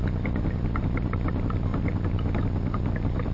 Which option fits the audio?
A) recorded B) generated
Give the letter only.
A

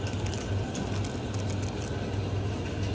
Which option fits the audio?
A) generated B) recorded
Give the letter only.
B